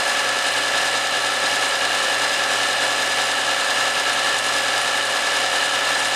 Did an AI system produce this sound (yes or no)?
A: no